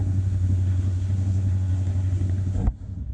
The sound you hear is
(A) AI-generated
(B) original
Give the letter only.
A